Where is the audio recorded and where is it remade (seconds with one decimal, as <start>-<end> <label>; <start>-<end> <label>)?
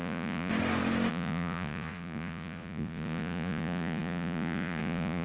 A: 0.0-0.5 remade; 0.5-1.1 recorded; 1.1-5.2 remade